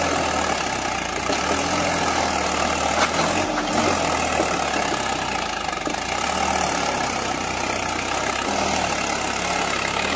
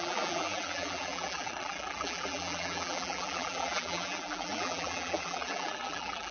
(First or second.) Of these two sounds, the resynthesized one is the second